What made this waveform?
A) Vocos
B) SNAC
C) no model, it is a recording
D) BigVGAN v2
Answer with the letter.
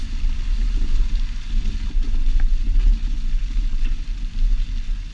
C